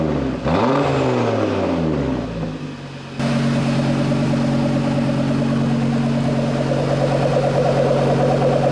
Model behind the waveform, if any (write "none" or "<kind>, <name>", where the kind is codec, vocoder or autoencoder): none